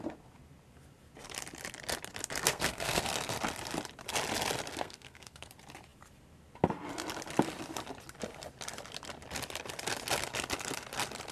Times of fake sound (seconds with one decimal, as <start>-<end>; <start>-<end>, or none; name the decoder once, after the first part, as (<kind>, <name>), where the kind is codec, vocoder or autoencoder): 2.4-3.0 (codec, SNAC); 4.7-5.5